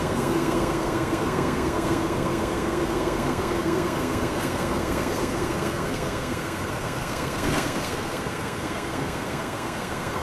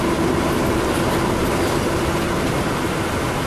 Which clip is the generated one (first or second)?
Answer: first